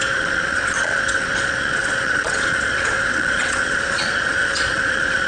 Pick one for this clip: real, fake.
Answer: fake